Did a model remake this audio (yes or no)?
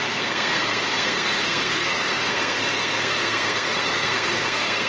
yes